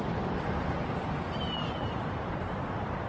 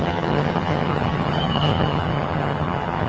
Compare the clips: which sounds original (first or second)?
first